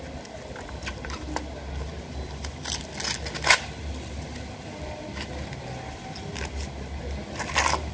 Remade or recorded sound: recorded